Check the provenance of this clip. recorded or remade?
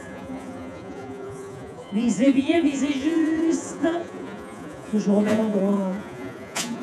remade